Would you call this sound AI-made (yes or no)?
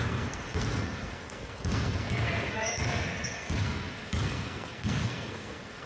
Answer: yes